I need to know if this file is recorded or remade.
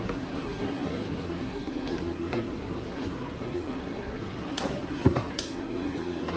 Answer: remade